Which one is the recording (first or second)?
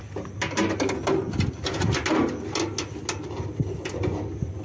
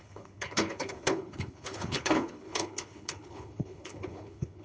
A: first